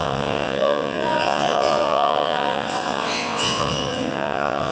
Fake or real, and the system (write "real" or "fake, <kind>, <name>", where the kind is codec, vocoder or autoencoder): fake, vocoder, WaveNeXt